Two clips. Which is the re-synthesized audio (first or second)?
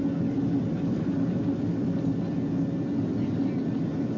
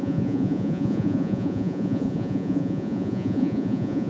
second